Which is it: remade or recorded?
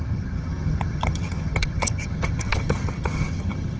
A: remade